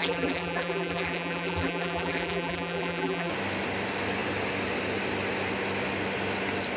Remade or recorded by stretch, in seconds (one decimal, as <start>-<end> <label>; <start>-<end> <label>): 0.0-3.3 remade; 3.3-6.8 recorded